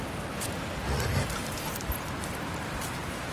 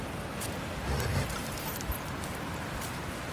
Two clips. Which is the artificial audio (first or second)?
second